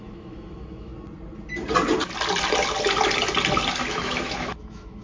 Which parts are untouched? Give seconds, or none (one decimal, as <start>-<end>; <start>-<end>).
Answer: 0.9-3.9